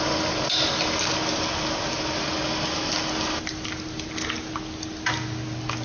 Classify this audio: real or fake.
real